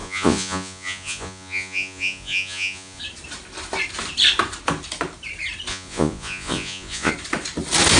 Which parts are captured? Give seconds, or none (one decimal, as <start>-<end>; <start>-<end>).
3.0-5.7; 7.1-8.0